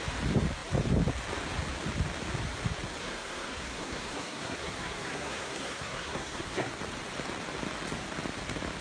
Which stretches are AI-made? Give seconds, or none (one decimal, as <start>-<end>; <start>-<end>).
3.0-6.7